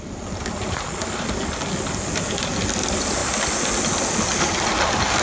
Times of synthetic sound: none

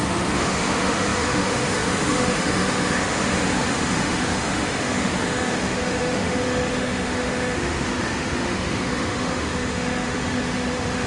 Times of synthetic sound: 0.0-11.1 (autoencoder, DAC-VAE)